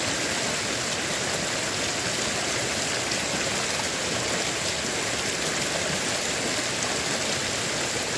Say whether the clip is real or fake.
real